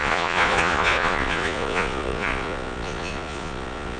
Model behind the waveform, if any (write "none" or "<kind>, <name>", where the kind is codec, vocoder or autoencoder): vocoder, Vocos